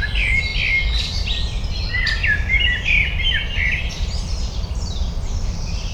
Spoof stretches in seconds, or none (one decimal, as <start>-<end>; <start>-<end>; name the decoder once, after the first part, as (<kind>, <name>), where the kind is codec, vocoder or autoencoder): 0.0-0.5 (vocoder, BigVGAN v2); 3.9-5.9